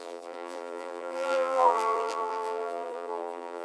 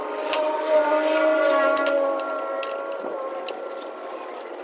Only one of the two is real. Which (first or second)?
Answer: second